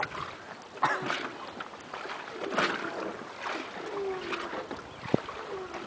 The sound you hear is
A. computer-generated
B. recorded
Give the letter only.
B